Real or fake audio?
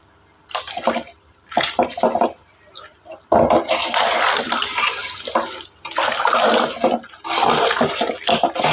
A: real